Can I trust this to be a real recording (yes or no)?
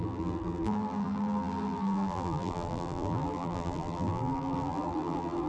no